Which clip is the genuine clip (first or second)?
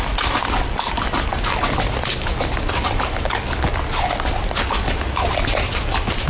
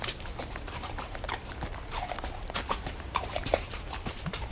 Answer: first